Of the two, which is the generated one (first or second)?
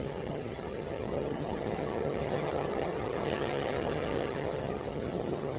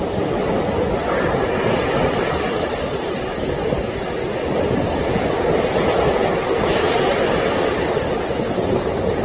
first